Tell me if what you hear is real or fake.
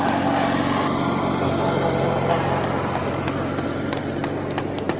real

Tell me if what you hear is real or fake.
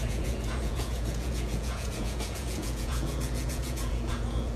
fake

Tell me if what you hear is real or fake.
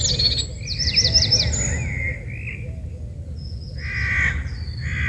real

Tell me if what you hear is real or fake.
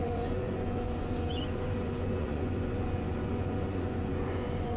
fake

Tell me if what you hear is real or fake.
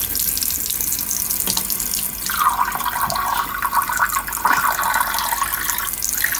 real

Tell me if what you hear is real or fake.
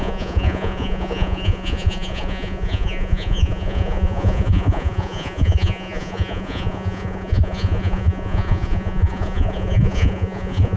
fake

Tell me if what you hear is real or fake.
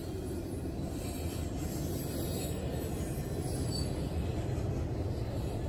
real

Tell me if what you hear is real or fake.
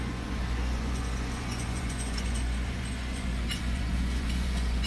fake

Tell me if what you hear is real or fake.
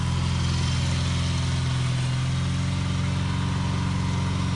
real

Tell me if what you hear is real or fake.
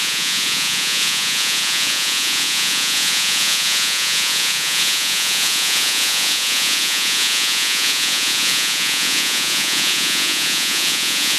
fake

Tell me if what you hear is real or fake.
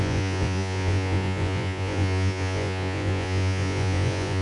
fake